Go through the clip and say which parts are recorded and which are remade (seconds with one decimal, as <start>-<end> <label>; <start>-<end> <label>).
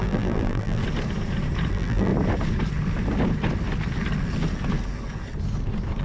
0.0-0.8 remade; 0.8-1.7 recorded; 1.7-2.1 remade; 2.1-6.0 recorded